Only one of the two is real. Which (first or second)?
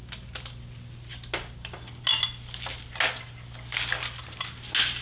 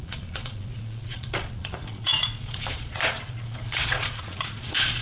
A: first